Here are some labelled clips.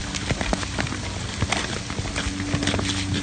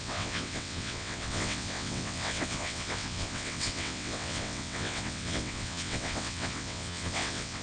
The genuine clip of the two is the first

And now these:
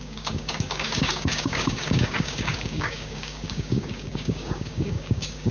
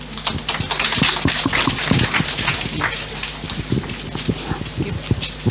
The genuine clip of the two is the second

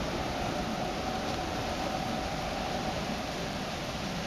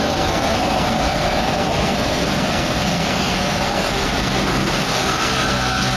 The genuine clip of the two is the first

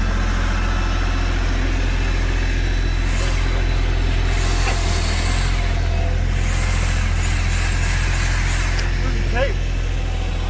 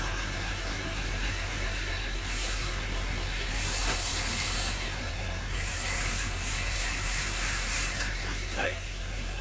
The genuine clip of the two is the first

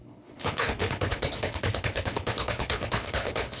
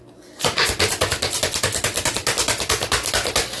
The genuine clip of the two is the second